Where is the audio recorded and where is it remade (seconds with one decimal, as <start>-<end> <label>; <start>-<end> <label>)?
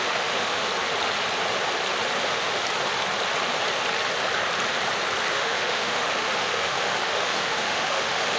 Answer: 0.0-0.7 remade; 0.7-2.2 recorded; 2.2-2.6 remade; 2.6-5.3 recorded; 5.3-8.4 remade